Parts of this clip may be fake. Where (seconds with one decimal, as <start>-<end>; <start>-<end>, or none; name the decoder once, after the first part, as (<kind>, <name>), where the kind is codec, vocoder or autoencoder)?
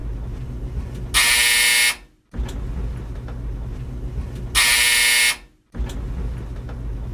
none